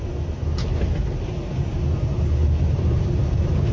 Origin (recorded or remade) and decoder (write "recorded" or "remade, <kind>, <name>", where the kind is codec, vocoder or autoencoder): recorded